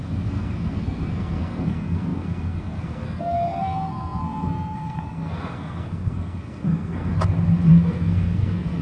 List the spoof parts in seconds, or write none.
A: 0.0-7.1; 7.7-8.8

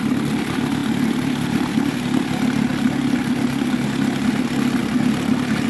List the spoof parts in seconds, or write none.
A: none